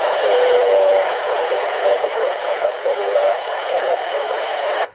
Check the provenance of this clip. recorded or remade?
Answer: remade